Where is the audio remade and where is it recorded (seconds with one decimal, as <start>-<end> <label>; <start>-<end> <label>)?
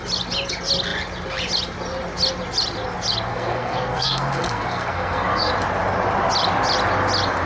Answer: 0.0-3.3 recorded; 3.3-5.5 remade; 5.5-7.5 recorded